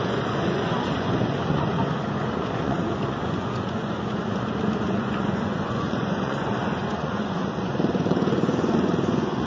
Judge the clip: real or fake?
fake